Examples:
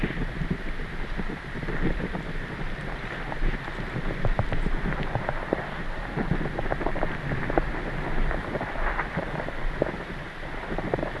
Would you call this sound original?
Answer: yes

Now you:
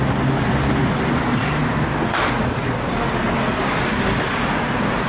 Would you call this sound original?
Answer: yes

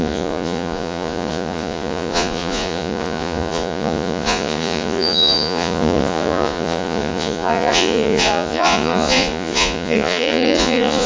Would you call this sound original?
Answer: no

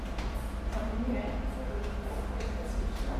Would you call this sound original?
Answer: yes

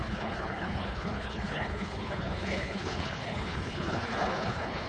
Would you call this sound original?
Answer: no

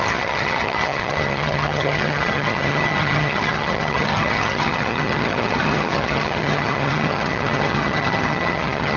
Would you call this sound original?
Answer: no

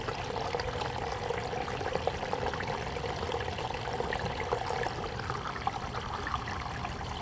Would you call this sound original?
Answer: yes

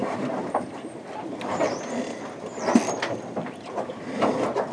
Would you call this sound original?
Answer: yes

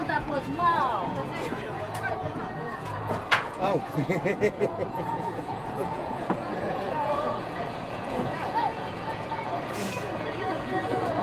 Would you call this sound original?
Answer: no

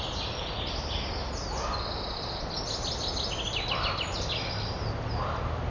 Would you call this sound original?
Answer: yes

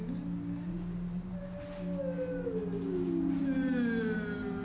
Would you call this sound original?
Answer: yes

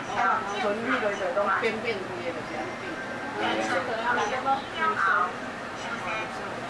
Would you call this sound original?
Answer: yes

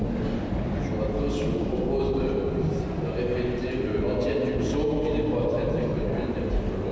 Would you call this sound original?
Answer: yes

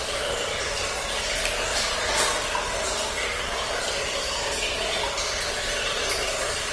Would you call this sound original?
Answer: yes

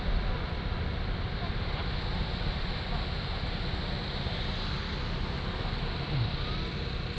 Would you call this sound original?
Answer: yes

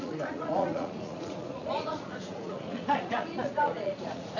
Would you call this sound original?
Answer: no